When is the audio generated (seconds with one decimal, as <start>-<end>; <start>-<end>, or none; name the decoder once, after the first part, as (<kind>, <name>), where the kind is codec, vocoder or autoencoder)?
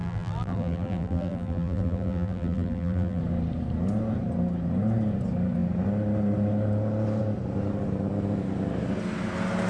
0.0-3.2 (vocoder, BigVGAN v2)